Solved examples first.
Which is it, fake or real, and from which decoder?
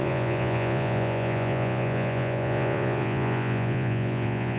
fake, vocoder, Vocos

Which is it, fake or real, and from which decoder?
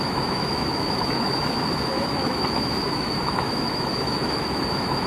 fake, autoencoder, DAC-VAE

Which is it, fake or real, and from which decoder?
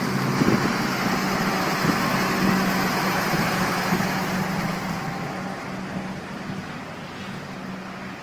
real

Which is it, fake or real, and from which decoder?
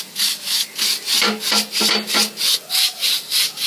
real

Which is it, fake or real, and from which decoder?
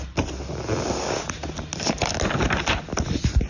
real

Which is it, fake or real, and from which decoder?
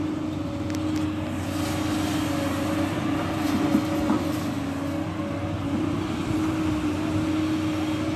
real